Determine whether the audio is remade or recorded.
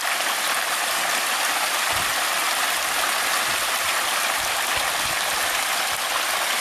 recorded